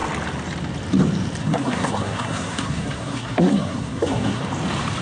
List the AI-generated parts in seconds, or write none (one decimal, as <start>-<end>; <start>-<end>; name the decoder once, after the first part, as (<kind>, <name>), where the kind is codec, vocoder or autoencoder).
1.4-4.4 (codec, SNAC)